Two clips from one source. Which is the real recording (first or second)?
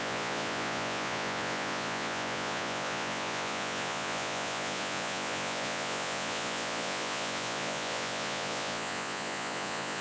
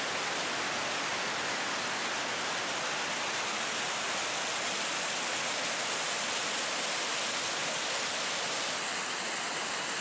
second